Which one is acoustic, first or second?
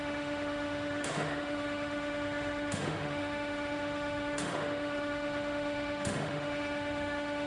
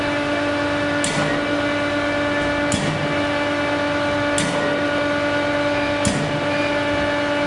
second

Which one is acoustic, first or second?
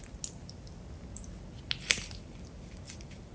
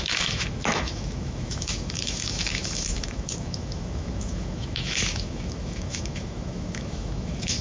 first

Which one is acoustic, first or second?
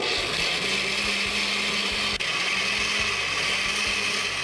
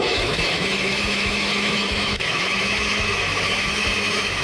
first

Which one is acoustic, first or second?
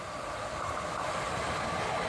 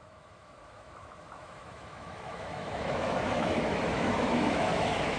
first